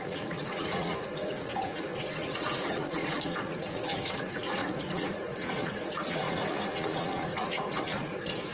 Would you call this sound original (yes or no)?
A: no